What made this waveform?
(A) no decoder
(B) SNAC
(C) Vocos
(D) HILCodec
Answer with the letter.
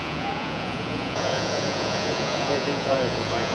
C